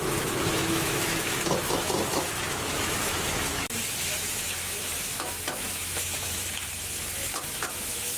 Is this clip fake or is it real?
fake